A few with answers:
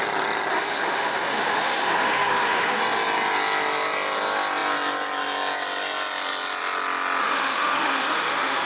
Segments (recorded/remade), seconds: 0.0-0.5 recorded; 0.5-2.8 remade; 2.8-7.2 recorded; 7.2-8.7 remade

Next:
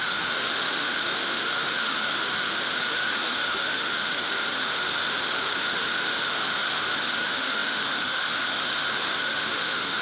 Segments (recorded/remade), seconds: 0.0-10.0 remade

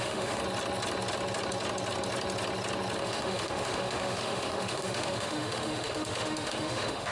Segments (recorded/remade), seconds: 0.0-0.4 remade; 0.4-3.0 recorded; 3.0-7.1 remade

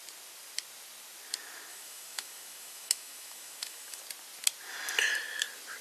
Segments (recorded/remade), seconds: 0.0-1.7 recorded; 1.7-4.0 remade; 4.0-5.8 recorded

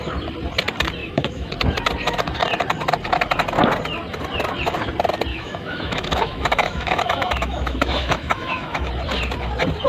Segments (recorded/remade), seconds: 0.0-1.0 recorded; 1.0-1.5 remade; 1.5-5.3 recorded; 5.3-8.9 remade; 8.9-9.9 recorded

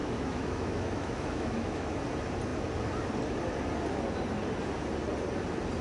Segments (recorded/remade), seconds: 0.0-2.0 remade; 2.0-5.8 recorded

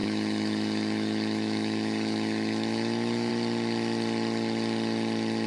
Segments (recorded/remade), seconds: 0.0-3.3 remade; 3.3-5.5 recorded

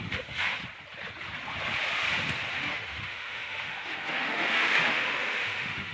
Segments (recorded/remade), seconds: 0.0-0.6 remade; 0.6-2.5 recorded; 2.5-5.9 remade